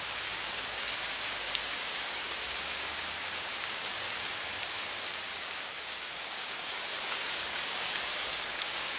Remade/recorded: remade